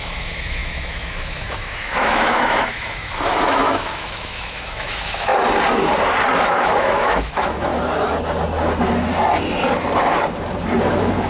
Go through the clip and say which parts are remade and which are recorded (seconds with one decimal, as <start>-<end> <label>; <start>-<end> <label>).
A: 0.0-5.3 remade; 5.3-6.4 recorded; 6.4-7.7 remade; 7.7-10.8 recorded; 10.8-11.3 remade